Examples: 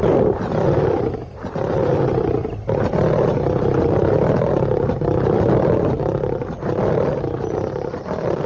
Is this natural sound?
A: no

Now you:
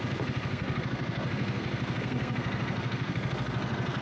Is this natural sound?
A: no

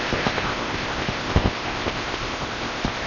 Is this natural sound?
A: no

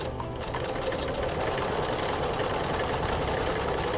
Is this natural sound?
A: yes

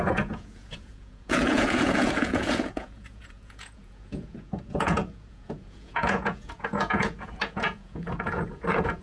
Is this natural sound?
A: no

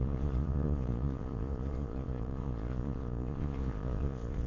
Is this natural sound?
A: no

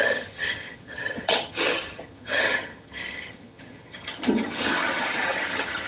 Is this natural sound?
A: no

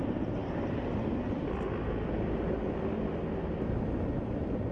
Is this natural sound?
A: yes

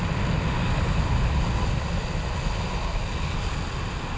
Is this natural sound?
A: yes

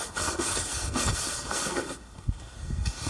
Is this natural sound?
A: no